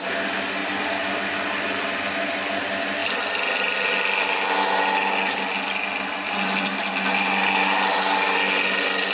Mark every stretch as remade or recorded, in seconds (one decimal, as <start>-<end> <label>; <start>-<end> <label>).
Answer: 0.0-9.1 recorded